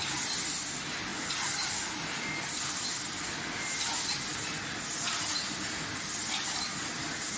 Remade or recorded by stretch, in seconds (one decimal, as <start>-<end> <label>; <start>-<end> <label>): 0.0-7.4 recorded